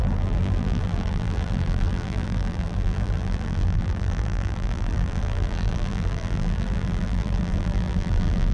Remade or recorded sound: remade